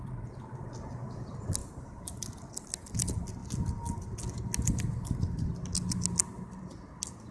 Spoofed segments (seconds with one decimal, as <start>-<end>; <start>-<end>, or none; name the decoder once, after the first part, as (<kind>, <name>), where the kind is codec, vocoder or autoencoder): none